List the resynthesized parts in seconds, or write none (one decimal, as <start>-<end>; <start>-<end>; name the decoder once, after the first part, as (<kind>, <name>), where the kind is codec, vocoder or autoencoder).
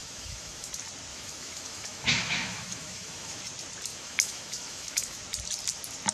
0.0-0.7 (autoencoder, DAC-VAE); 1.1-3.4; 3.9-5.2